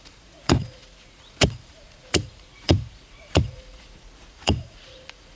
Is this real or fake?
fake